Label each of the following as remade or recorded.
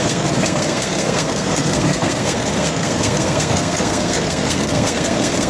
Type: remade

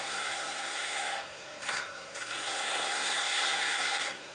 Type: remade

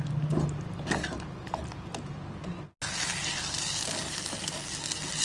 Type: recorded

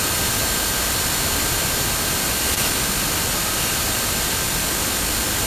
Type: recorded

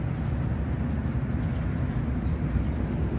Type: recorded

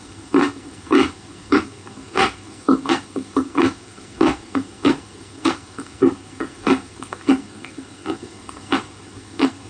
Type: remade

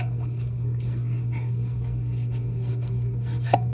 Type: remade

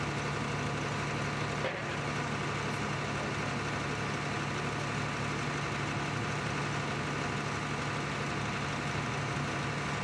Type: recorded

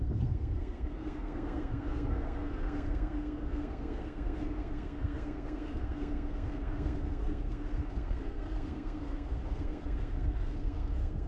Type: remade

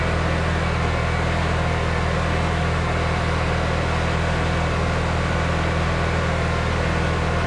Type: recorded